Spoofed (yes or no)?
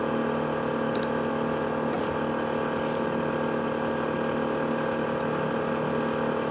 no